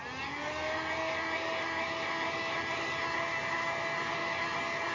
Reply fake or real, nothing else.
real